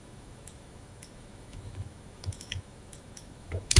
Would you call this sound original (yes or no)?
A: no